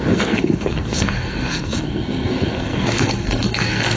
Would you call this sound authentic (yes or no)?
no